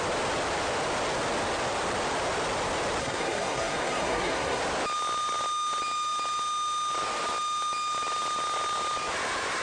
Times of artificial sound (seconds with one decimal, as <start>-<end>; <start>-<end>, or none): 3.0-4.6